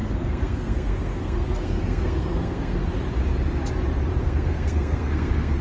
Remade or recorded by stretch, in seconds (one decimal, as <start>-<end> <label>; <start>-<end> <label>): 0.0-2.8 remade; 2.8-4.2 recorded; 4.2-5.6 remade